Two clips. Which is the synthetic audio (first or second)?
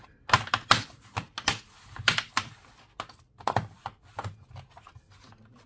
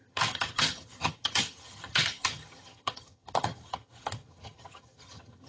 second